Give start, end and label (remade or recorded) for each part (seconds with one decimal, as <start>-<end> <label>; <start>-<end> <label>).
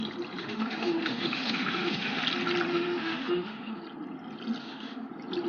0.0-0.4 recorded; 0.4-2.2 remade; 2.2-2.7 recorded; 2.7-3.8 remade; 3.8-4.6 recorded; 4.6-5.1 remade; 5.1-5.5 recorded